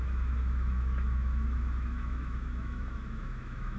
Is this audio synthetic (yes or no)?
yes